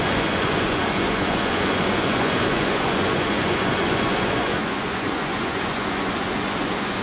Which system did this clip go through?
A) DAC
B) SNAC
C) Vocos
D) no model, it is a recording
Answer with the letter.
C